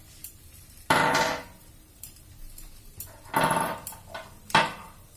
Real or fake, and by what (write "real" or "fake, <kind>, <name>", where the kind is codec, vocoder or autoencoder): fake, vocoder, BigVGAN v2